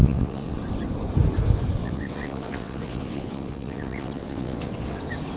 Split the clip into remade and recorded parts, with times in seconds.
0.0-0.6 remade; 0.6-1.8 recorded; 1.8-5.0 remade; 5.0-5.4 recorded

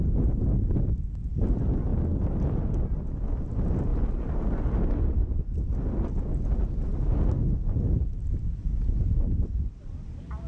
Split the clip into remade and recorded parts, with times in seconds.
0.0-10.5 recorded